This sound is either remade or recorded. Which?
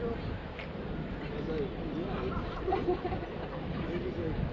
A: recorded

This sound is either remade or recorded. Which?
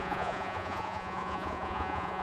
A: remade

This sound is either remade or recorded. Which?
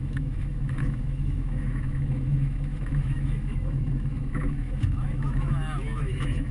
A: remade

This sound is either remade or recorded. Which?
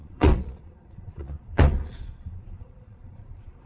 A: remade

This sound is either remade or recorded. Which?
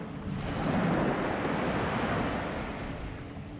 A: recorded